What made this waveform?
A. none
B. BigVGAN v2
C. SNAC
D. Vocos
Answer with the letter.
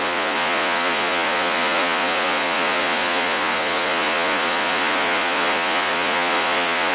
D